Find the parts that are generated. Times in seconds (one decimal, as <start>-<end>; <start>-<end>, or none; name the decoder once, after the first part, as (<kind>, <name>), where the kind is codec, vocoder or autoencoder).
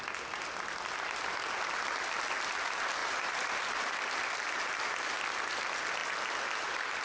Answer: 3.0-4.8 (vocoder, BigVGAN v2)